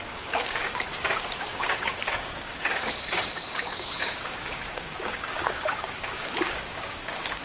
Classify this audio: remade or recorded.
remade